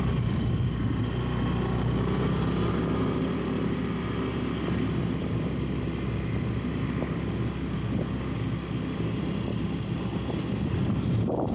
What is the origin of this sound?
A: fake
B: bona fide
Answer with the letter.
B